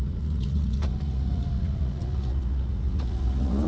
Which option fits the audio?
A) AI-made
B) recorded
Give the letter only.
A